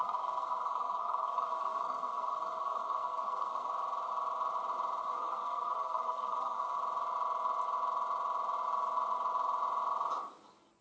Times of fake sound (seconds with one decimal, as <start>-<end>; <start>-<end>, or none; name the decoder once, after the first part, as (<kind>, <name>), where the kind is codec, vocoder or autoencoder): 0.0-3.7 (codec, SNAC); 5.0-6.8